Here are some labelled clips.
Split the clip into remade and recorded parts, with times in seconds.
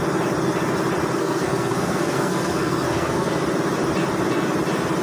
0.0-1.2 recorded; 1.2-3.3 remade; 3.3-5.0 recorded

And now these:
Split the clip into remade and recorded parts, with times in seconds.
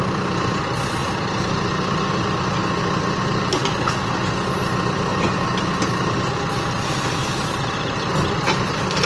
0.0-1.0 recorded; 1.0-3.2 remade; 3.2-5.1 recorded; 5.1-8.1 remade; 8.1-9.1 recorded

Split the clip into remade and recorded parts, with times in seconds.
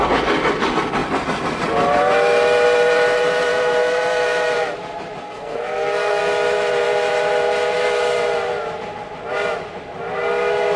0.0-5.2 recorded; 5.2-6.2 remade; 6.2-10.8 recorded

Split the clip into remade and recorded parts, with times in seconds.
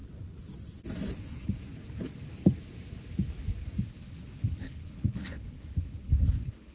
0.0-1.2 recorded; 1.2-1.6 remade; 1.6-3.8 recorded; 3.8-6.7 remade